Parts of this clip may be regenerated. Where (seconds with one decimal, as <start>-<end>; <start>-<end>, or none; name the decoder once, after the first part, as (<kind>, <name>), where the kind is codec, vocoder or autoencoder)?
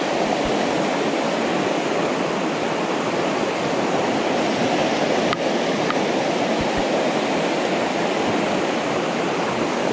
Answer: none